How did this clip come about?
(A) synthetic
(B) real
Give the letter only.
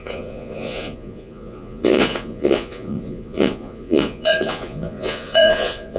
A